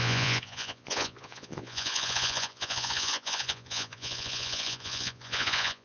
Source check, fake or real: fake